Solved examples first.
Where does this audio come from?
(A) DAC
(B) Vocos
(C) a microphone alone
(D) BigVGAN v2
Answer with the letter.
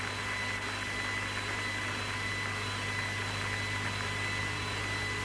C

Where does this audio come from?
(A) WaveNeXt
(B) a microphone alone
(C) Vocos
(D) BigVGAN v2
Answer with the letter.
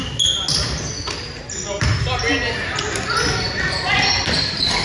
B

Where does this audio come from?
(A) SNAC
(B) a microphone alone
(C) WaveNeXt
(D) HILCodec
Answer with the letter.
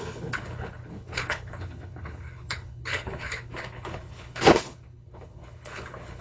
D